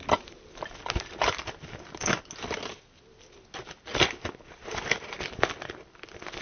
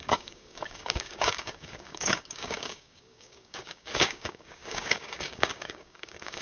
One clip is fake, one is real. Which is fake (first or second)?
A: second